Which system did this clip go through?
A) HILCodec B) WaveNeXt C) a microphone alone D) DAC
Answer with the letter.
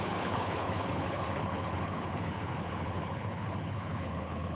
A